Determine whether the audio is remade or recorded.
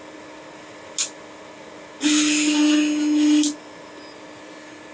recorded